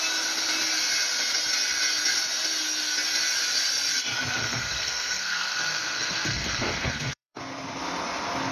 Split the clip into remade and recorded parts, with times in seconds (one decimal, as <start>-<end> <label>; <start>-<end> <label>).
0.0-4.4 recorded; 4.4-7.4 remade; 7.4-8.5 recorded